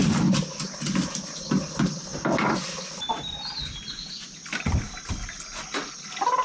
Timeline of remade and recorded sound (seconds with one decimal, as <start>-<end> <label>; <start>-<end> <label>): 0.0-6.4 recorded